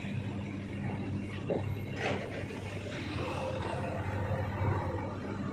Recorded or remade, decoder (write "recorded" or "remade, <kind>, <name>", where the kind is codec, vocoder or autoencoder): recorded